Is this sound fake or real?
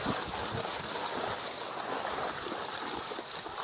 real